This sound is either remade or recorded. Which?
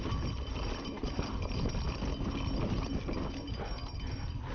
recorded